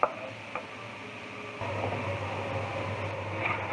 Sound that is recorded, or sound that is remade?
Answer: recorded